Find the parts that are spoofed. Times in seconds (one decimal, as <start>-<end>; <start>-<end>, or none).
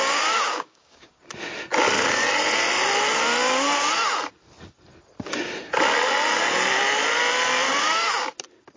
0.0-1.1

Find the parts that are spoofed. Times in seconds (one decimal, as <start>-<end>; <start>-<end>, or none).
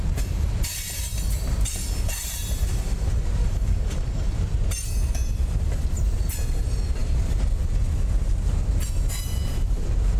3.4-4.4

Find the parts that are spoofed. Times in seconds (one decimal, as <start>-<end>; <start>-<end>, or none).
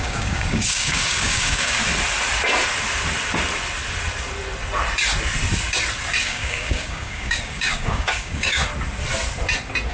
0.0-1.8; 6.2-8.6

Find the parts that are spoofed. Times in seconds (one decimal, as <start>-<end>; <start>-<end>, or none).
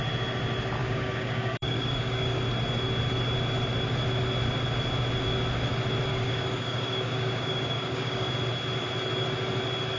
0.8-2.4; 6.1-8.3